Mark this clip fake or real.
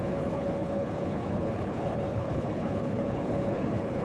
fake